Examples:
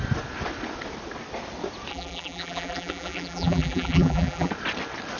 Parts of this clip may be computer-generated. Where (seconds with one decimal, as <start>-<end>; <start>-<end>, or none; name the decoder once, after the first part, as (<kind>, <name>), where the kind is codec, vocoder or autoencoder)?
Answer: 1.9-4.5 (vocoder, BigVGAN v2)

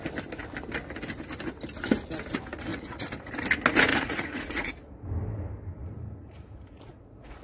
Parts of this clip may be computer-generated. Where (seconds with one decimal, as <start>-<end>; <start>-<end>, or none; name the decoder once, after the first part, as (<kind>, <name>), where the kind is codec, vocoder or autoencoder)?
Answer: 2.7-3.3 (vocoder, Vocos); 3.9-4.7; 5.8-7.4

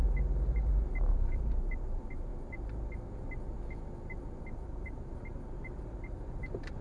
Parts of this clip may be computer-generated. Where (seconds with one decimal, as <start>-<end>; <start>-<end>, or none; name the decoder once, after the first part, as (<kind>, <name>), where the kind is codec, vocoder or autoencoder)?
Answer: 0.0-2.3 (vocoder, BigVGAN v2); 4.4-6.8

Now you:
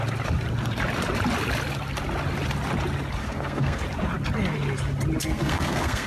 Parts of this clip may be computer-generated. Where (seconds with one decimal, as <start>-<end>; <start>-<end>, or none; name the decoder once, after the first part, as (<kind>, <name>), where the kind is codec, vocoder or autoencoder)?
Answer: 3.2-3.8 (codec, SNAC); 5.2-6.1

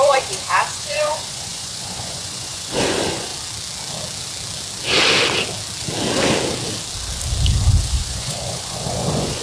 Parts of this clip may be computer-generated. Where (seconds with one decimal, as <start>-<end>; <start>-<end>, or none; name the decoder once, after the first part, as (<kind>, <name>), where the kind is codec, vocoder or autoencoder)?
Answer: 0.0-3.3 (vocoder, Vocos); 7.9-9.4

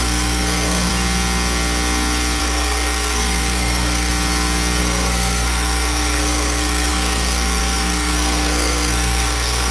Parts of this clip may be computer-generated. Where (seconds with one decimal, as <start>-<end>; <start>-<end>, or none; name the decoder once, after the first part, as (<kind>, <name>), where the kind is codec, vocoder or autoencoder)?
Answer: 0.0-0.9 (codec, SNAC); 2.4-4.1; 4.8-9.7

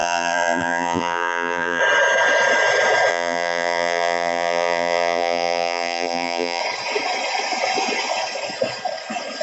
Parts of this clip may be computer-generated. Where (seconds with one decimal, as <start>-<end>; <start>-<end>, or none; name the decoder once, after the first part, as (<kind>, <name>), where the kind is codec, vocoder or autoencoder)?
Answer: 0.0-1.8 (vocoder, BigVGAN v2); 3.1-6.6